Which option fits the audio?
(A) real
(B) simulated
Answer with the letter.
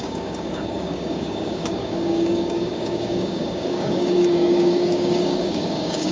B